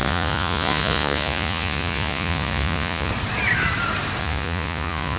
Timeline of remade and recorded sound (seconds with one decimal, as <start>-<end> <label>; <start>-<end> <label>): 0.0-3.1 remade; 3.1-4.2 recorded; 4.2-5.2 remade

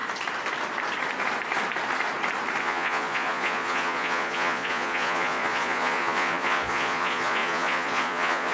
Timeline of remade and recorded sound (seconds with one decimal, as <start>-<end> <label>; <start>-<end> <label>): 0.0-2.6 recorded; 2.6-8.5 remade

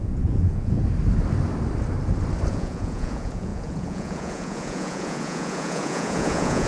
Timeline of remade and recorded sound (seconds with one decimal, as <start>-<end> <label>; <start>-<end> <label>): 0.0-0.8 remade; 0.8-2.5 recorded; 2.5-6.7 remade

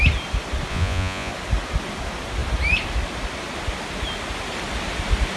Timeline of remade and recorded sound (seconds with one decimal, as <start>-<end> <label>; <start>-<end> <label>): 0.0-0.7 recorded; 0.7-1.3 remade; 1.3-5.4 recorded

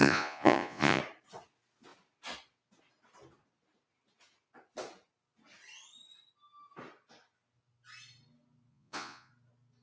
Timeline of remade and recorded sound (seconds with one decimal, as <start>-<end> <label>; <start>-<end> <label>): 0.0-1.0 remade; 1.0-8.7 recorded; 8.7-9.3 remade; 9.3-9.8 recorded

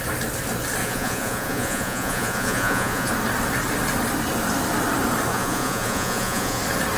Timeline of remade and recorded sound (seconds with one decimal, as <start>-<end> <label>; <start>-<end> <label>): 0.0-0.8 recorded; 0.8-3.1 remade; 3.1-5.3 recorded; 5.3-6.6 remade; 6.6-7.0 recorded

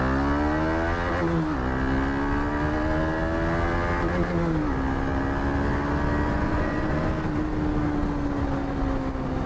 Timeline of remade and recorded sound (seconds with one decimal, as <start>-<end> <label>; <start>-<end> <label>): 0.0-6.3 recorded; 6.3-7.1 remade; 7.1-9.5 recorded